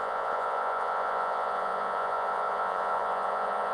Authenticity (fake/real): fake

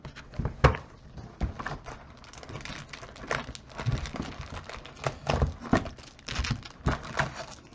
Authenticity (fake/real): real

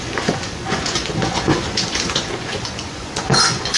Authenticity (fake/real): fake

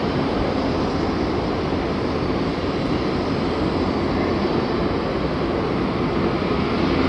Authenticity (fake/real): real